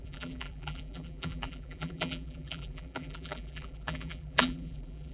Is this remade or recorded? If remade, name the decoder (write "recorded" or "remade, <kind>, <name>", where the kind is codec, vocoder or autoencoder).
remade, vocoder, BigVGAN v2